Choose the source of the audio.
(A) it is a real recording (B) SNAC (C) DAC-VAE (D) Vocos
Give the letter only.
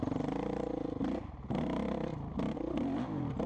A